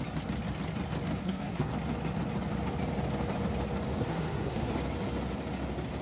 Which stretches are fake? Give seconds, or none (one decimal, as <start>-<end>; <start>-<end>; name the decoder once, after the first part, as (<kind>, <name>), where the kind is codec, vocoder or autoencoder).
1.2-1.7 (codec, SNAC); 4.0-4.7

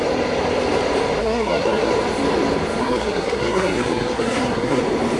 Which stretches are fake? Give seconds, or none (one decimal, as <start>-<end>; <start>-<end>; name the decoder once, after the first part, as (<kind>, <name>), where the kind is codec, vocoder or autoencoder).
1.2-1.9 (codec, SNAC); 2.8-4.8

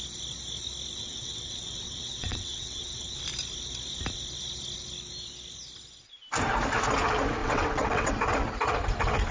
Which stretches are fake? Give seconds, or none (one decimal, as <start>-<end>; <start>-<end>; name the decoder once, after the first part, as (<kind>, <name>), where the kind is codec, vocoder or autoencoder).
1.0-3.2 (vocoder, WaveNeXt); 7.4-8.1